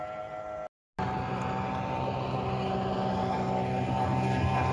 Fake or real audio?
real